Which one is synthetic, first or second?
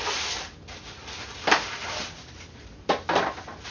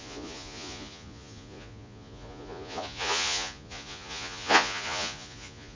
second